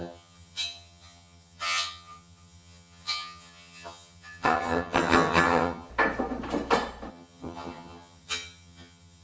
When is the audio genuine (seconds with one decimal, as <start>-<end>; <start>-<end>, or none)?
5.9-7.1